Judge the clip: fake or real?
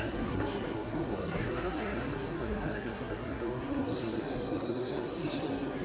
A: fake